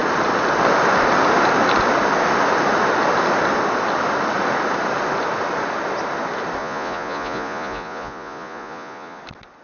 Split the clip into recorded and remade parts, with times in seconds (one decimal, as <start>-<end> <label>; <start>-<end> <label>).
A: 0.0-6.6 recorded; 6.6-9.2 remade; 9.2-9.6 recorded